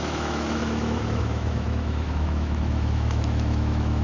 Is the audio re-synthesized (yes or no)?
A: yes